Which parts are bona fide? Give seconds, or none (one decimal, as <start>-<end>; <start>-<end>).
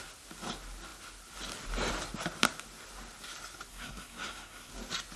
0.0-3.7; 4.7-5.2